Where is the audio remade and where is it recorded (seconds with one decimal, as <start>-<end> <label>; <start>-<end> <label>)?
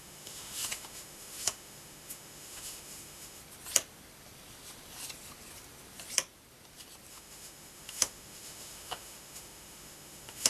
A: 0.0-3.4 remade; 3.4-7.1 recorded; 7.1-10.5 remade